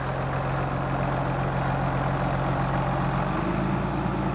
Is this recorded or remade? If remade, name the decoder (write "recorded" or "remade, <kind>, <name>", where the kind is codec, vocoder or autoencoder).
recorded